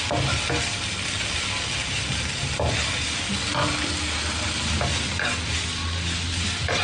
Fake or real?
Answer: real